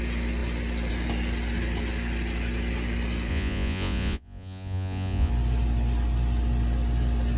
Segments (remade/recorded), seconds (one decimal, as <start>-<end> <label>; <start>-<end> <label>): 0.0-3.3 recorded; 3.3-5.3 remade; 5.3-7.4 recorded